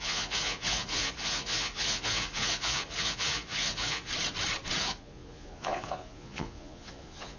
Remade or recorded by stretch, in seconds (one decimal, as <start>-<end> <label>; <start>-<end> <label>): 0.0-4.1 remade; 4.1-4.8 recorded; 4.8-7.4 remade